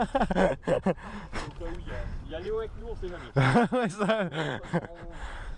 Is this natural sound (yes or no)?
no